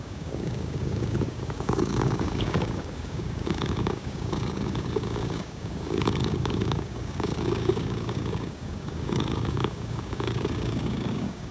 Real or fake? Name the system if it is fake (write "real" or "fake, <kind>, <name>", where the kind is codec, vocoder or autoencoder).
fake, codec, DAC